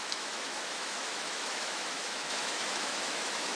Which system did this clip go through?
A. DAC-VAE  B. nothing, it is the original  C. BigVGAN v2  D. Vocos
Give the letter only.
A